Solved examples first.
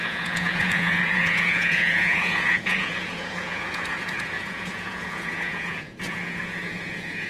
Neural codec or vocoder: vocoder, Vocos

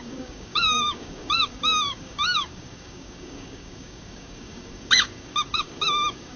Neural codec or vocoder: codec, DAC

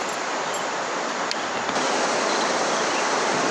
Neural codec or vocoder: none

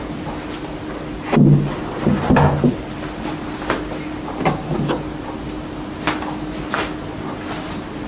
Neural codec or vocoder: none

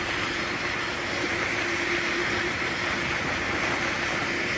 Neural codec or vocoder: vocoder, BigVGAN v2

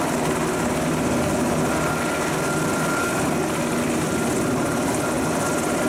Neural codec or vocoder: none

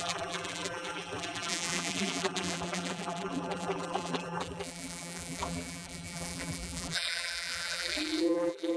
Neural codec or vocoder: vocoder, BigVGAN v2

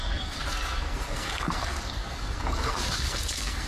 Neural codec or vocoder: codec, SNAC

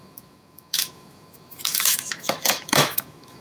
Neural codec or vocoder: autoencoder, DAC-VAE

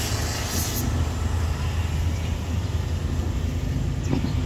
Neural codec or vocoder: none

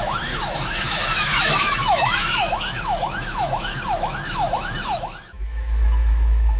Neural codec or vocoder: autoencoder, DAC-VAE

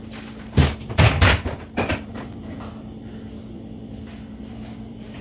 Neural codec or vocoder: vocoder, BigVGAN v2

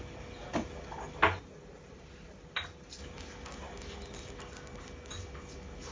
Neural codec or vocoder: none